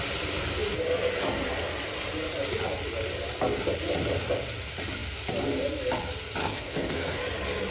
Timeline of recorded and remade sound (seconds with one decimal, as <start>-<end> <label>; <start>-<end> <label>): 0.0-6.4 recorded; 6.4-7.2 remade; 7.2-7.7 recorded